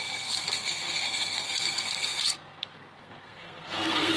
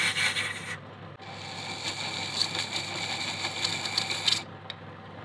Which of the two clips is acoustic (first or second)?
second